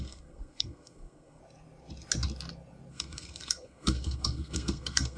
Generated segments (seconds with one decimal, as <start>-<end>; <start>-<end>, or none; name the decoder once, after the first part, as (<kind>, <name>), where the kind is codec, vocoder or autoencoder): 0.0-1.4 (codec, SNAC); 2.9-5.2